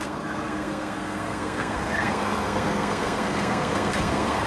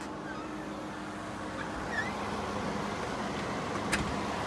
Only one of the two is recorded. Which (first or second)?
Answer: second